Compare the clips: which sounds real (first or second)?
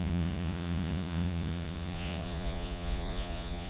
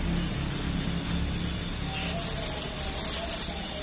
second